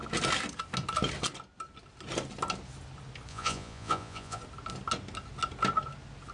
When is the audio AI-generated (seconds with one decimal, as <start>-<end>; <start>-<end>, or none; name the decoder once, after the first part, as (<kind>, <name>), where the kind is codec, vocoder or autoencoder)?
3.3-4.4 (vocoder, Vocos)